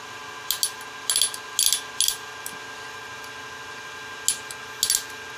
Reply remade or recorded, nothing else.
recorded